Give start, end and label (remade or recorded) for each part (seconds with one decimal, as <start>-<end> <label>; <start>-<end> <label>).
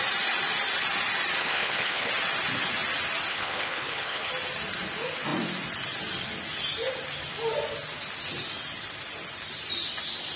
0.0-1.4 recorded; 1.4-2.1 remade; 2.1-3.3 recorded; 3.3-4.3 remade; 4.3-10.4 recorded